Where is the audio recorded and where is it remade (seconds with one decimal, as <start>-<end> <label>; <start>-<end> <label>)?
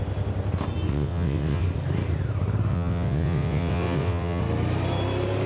0.0-0.9 recorded; 0.9-1.6 remade; 1.6-2.7 recorded; 2.7-4.4 remade; 4.4-5.5 recorded